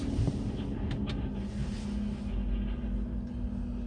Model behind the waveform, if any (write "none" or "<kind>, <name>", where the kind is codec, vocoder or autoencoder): none